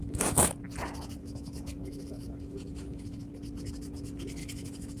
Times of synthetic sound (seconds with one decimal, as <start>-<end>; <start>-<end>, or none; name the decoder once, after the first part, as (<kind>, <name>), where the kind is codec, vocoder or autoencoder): 0.0-0.5 (autoencoder, DAC-VAE); 1.2-3.3; 4.4-5.0